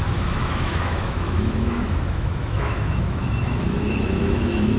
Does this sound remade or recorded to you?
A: remade